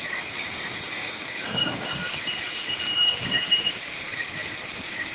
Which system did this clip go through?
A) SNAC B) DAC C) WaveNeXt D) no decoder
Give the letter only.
B